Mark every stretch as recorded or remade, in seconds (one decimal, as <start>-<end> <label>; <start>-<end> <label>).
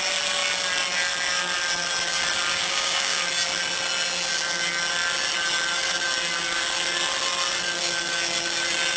0.0-2.5 recorded; 2.5-3.2 remade; 3.2-9.0 recorded